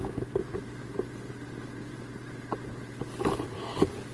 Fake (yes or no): no